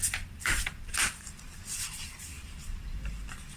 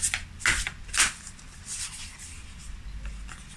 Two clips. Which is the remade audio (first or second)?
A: first